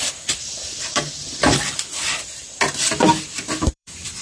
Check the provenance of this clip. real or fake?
fake